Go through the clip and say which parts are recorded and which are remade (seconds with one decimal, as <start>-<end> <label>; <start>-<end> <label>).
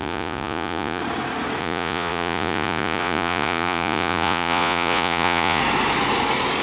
0.0-1.0 remade; 1.0-1.6 recorded; 1.6-5.6 remade; 5.6-6.6 recorded